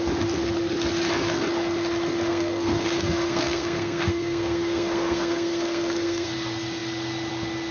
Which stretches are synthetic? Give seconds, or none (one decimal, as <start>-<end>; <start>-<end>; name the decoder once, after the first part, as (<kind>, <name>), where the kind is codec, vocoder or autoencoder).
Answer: 2.3-6.3 (codec, SNAC)